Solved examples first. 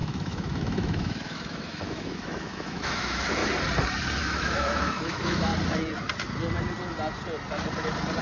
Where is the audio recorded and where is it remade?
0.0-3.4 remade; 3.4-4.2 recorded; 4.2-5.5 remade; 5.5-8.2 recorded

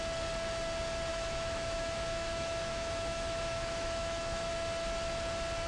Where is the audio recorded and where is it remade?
0.0-1.1 recorded; 1.1-4.5 remade; 4.5-5.7 recorded

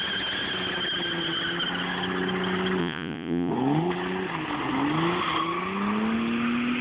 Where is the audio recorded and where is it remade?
0.0-2.8 recorded; 2.8-3.5 remade; 3.5-6.8 recorded

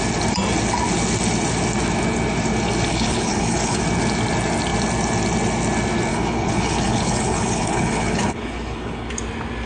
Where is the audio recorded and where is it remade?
0.0-2.9 recorded; 2.9-3.8 remade; 3.8-6.1 recorded; 6.1-9.1 remade; 9.1-9.7 recorded